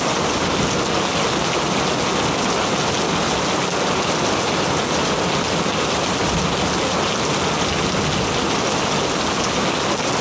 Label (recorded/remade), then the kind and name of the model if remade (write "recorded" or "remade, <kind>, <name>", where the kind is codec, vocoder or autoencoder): recorded